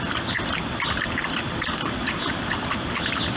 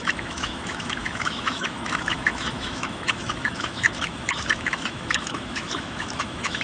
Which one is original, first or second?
first